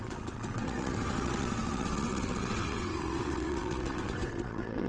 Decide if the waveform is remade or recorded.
remade